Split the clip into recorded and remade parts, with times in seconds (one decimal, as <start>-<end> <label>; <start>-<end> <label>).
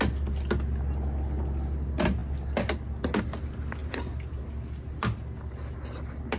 0.0-6.4 recorded